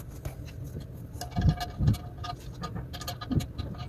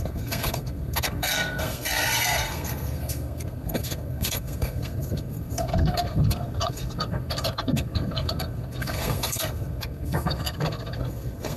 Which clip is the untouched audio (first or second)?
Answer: first